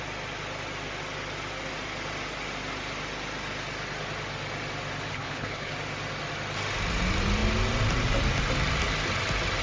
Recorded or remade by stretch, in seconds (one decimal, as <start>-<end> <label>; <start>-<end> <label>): 0.0-5.1 recorded; 5.1-5.7 remade; 5.7-9.6 recorded